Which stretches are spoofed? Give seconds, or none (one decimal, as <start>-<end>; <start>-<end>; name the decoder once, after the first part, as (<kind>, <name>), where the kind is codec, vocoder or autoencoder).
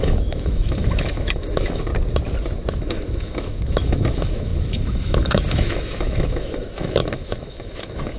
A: 0.0-1.9 (autoencoder, DAC-VAE); 2.7-8.2